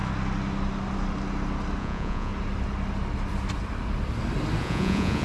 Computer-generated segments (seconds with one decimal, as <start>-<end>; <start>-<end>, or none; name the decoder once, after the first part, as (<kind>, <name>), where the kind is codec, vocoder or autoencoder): 1.8-2.3 (vocoder, Vocos); 4.6-5.2